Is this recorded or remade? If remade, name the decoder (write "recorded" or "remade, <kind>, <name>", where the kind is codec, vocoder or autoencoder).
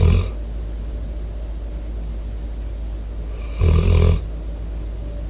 recorded